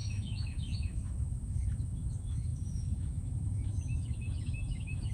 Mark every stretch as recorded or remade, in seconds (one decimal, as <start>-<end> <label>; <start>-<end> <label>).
0.0-5.1 remade